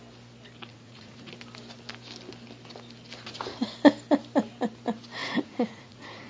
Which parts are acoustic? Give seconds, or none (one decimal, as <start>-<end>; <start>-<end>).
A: 0.0-0.7; 1.3-5.2